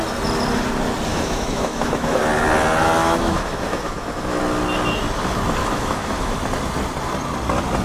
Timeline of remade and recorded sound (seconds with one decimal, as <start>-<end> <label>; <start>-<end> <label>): 0.0-1.1 recorded; 1.1-2.2 remade; 2.2-3.0 recorded; 3.0-4.4 remade; 4.4-5.6 recorded; 5.6-6.4 remade; 6.4-7.8 recorded